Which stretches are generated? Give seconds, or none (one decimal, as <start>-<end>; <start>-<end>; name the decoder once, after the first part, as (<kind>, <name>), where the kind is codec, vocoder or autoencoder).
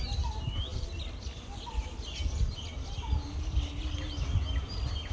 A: none